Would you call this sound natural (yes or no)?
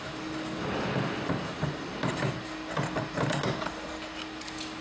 yes